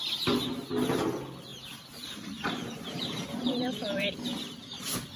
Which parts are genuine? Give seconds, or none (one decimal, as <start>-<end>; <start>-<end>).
0.0-1.5; 4.1-5.2